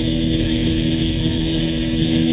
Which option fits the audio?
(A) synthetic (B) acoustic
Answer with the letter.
A